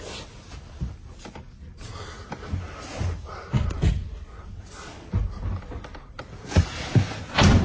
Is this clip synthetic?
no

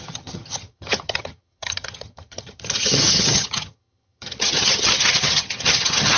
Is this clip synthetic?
yes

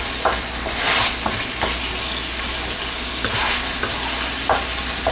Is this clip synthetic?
no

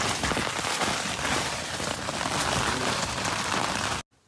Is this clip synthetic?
no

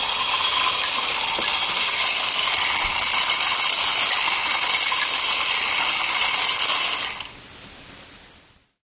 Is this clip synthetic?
no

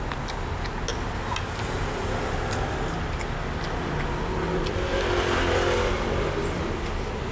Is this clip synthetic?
no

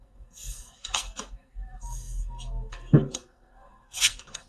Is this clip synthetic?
yes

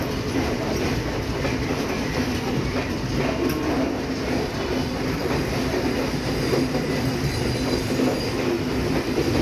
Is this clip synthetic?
no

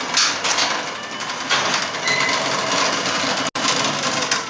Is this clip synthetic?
no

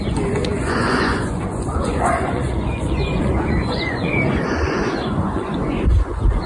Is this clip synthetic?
yes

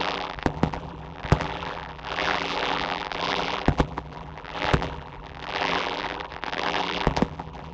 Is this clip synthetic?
yes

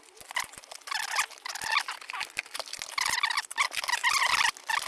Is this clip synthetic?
no